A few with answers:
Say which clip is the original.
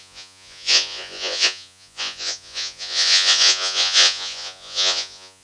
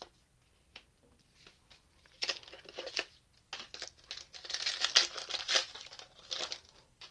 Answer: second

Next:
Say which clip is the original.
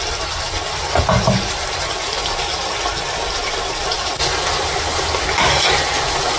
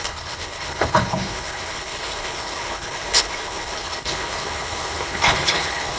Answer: first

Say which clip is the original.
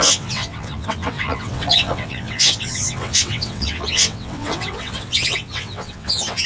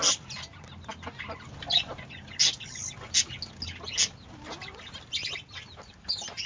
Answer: second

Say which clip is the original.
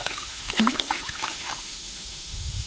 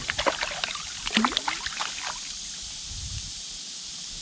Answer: second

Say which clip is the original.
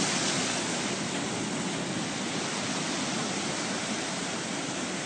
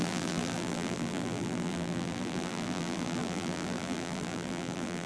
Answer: first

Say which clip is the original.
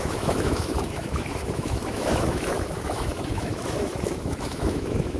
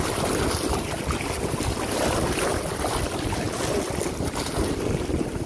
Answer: second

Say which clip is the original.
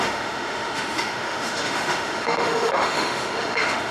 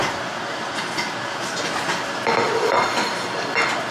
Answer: second